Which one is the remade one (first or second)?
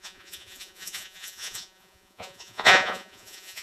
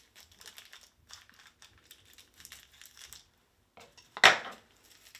first